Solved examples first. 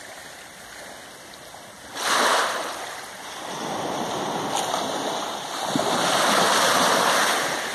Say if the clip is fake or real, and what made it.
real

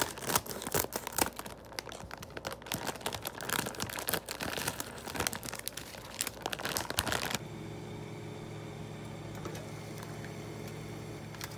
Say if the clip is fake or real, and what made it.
real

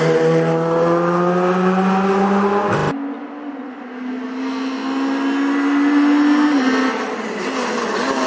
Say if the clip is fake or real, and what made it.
real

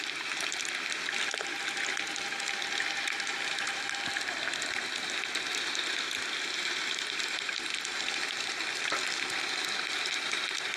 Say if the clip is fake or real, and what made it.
real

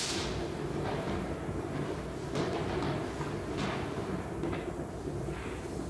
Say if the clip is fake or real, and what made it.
real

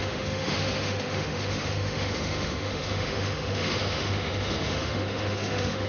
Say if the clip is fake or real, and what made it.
fake, autoencoder, DAC-VAE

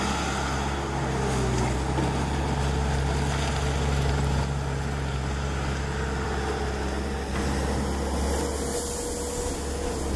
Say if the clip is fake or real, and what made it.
real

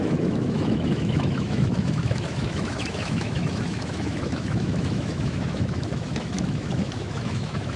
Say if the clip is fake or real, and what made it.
fake, autoencoder, DAC-VAE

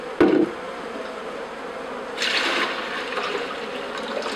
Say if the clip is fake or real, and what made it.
real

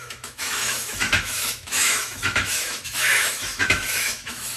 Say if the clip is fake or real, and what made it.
fake, autoencoder, DAC-VAE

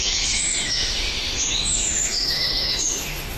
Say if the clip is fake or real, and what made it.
fake, autoencoder, DAC-VAE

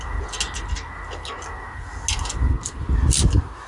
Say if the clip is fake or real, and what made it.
real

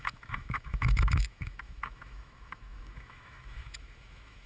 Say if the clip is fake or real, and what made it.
fake, autoencoder, DAC-VAE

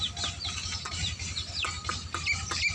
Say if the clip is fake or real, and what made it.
real